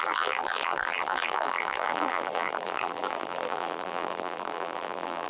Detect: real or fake fake